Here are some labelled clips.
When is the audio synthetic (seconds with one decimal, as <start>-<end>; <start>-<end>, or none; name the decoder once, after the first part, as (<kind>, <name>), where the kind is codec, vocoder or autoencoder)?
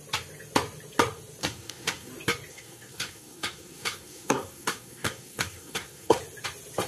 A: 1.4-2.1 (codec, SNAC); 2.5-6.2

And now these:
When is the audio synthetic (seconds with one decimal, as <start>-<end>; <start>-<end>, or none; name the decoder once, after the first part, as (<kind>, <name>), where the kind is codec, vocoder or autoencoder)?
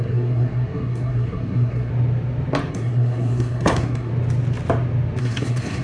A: 0.0-1.9 (codec, SNAC); 2.7-4.1; 5.2-5.8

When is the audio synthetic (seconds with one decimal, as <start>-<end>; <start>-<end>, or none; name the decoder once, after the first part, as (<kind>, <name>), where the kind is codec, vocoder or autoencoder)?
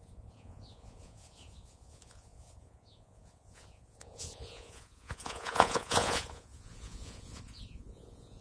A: 0.0-8.4 (vocoder, Vocos)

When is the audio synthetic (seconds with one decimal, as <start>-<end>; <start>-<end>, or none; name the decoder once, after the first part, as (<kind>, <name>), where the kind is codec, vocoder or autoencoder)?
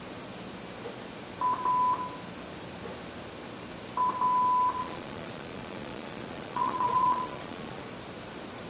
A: 4.8-7.8 (vocoder, Vocos)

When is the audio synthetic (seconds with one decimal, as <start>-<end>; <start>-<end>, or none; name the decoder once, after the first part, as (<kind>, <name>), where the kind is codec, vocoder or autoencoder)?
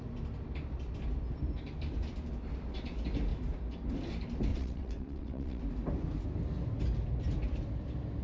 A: 4.5-5.6 (vocoder, WaveNeXt)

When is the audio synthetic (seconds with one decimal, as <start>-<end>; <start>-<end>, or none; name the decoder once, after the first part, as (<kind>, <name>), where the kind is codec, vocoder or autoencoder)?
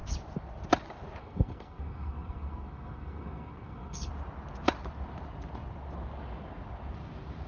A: 1.2-4.1 (codec, SNAC)